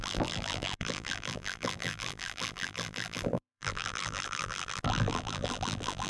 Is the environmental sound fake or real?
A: fake